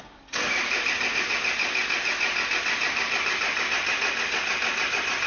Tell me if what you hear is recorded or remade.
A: recorded